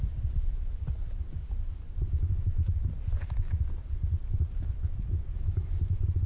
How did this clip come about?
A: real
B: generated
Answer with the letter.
A